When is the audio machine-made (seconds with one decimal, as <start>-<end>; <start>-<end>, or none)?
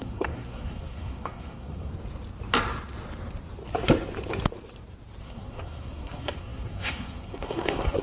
0.0-1.9; 5.2-8.0